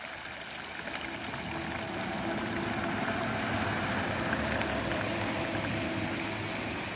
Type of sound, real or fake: real